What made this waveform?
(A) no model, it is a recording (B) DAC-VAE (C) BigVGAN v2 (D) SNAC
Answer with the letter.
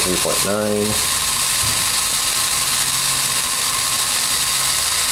A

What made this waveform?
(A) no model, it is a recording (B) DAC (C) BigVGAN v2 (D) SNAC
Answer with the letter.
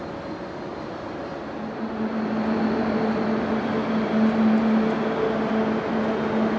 A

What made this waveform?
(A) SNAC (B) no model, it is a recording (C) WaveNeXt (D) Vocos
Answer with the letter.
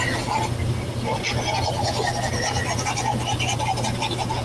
B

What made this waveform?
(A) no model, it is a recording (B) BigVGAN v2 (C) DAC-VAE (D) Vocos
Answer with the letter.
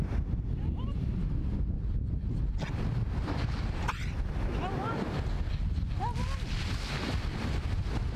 A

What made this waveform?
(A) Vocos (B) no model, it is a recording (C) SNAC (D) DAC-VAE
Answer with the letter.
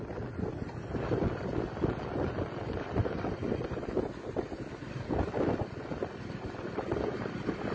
B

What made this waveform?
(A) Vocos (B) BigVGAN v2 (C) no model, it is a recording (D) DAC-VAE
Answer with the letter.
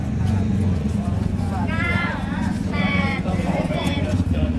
A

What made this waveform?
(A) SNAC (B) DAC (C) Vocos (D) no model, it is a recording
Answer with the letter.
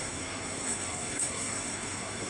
A